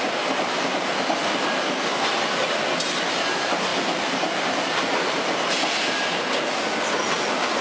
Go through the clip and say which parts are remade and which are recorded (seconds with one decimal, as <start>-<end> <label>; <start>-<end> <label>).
0.0-7.6 recorded